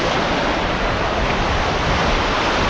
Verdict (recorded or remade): remade